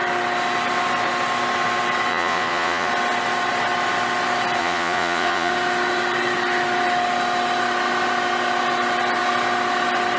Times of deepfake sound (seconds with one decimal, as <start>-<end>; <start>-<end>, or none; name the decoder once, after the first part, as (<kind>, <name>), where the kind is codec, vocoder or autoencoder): 2.1-2.9 (vocoder, Vocos); 4.6-5.5